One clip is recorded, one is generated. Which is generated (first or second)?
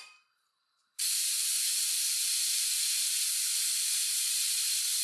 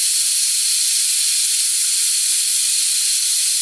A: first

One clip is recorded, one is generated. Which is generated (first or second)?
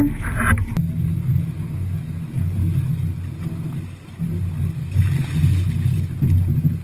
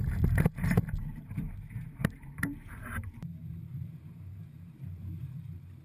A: second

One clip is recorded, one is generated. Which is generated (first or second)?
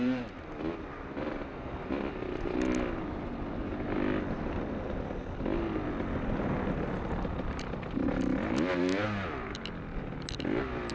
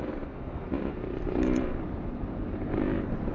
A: second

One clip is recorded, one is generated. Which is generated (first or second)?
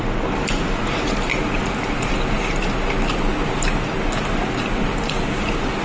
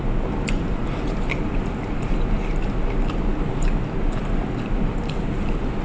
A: second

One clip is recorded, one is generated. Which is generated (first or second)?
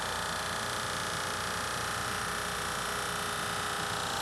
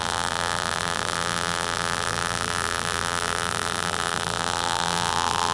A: second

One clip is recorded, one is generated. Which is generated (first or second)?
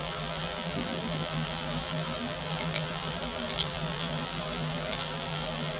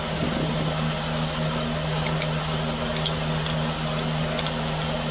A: first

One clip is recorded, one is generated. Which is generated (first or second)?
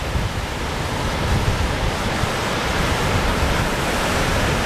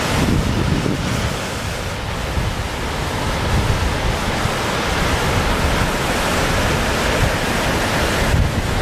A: first